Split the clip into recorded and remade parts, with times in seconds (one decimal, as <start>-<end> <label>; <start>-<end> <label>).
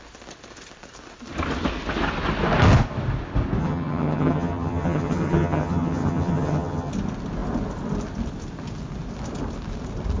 0.0-3.6 recorded; 3.6-6.9 remade; 6.9-10.2 recorded